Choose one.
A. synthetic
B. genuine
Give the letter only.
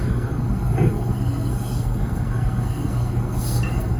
A